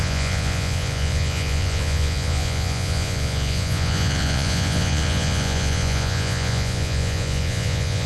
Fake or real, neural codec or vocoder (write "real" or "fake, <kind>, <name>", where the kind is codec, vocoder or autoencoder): fake, vocoder, Vocos